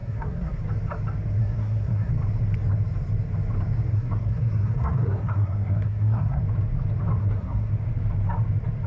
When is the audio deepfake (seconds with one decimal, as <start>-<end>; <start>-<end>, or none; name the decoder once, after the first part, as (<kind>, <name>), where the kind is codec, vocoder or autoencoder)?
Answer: 0.0-0.6 (codec, SNAC); 1.4-2.1; 3.9-6.4; 7.2-7.7